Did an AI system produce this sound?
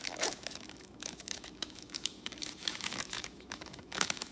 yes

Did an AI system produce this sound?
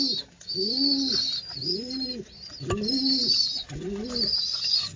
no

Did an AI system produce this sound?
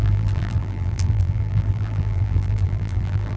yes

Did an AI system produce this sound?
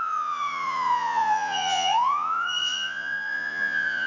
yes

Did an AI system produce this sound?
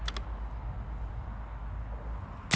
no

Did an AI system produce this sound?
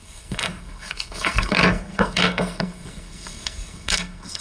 yes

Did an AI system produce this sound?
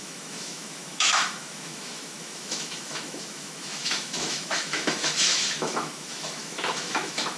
yes